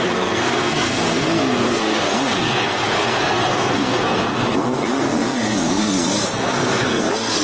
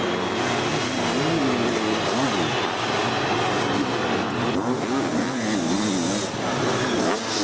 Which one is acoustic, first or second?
second